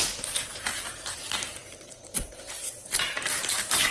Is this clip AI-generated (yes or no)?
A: yes